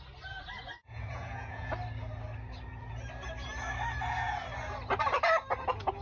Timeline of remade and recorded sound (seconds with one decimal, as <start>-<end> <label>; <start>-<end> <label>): 0.0-0.8 recorded; 0.8-1.7 remade; 1.7-6.0 recorded